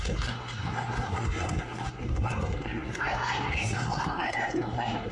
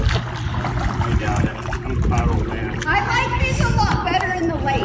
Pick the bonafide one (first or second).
second